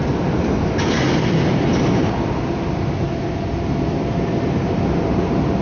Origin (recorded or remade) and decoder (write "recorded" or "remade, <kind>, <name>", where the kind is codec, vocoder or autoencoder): recorded